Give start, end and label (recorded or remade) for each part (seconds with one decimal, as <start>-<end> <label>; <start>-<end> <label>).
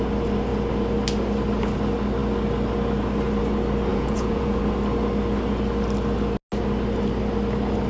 0.0-3.9 recorded; 3.9-4.6 remade; 4.6-7.9 recorded